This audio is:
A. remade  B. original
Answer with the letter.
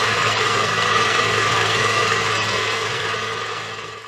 A